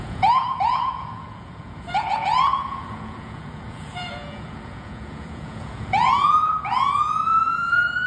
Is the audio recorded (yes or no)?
no